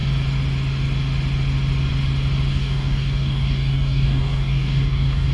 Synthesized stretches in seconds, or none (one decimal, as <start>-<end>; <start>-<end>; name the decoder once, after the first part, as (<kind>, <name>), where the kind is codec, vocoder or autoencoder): 2.5-5.3 (codec, DAC)